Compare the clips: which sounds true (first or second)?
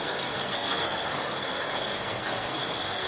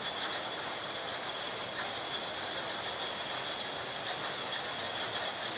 second